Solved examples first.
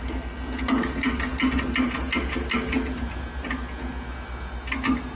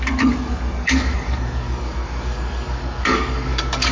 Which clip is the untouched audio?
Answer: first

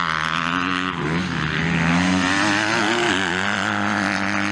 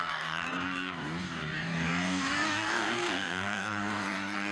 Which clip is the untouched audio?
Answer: first